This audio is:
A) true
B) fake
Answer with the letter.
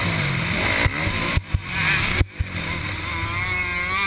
A